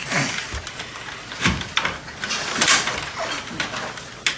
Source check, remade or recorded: recorded